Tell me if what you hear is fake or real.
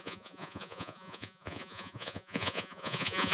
fake